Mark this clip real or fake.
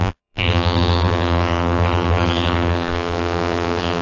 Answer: fake